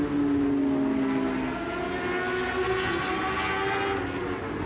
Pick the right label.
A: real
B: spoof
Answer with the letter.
A